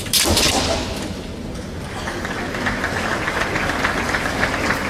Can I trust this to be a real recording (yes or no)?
yes